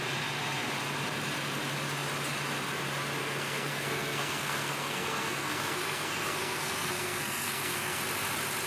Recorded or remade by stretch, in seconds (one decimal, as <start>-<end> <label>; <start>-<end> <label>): 0.0-3.2 recorded; 3.2-8.0 remade; 8.0-8.7 recorded

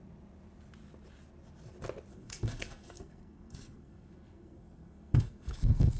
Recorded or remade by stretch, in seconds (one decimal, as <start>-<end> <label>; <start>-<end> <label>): 0.0-2.1 recorded; 2.1-6.0 remade